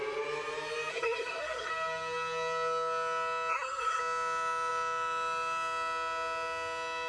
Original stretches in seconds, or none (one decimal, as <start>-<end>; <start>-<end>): 0.0-0.9; 1.7-3.5; 4.0-7.1